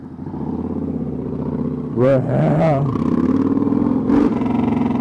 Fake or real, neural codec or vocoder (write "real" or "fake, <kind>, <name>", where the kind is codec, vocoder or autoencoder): fake, vocoder, BigVGAN v2